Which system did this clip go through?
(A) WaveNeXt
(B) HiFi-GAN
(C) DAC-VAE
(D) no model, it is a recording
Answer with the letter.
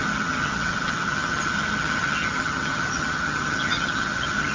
B